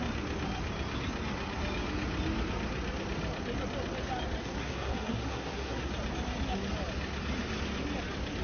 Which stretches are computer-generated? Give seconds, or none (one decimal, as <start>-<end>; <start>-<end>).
4.4-5.9